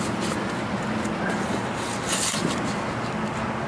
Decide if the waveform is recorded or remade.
recorded